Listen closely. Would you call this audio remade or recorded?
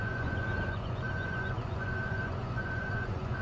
remade